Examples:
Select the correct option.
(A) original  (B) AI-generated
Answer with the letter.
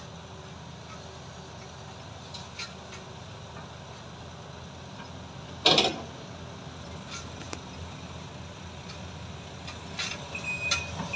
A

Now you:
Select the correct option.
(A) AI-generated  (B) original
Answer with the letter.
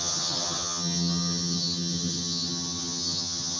A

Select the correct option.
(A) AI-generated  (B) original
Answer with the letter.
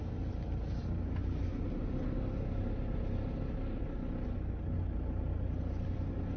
B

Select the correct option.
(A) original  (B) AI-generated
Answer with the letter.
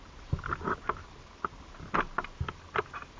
A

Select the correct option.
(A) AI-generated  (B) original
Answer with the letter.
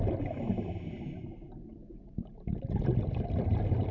B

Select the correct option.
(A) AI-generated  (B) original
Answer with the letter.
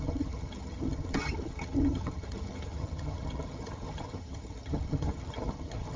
A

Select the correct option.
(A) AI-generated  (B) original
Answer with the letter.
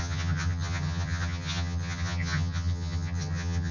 A